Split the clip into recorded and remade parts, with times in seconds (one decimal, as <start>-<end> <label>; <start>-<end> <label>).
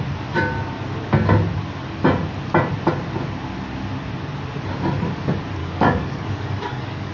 0.0-5.6 recorded; 5.6-7.1 remade